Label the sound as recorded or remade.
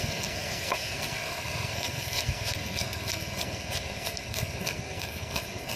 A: remade